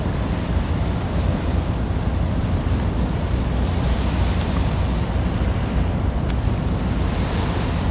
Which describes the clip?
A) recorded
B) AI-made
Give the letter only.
A